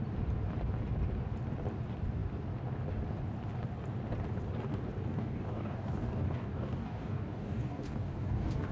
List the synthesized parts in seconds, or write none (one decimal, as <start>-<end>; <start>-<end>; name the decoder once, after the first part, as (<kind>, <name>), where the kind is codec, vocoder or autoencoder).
5.1-8.7 (codec, DAC)